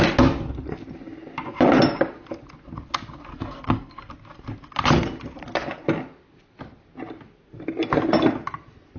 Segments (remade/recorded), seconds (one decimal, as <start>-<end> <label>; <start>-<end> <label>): 0.0-3.3 recorded; 3.3-4.1 remade; 4.1-9.0 recorded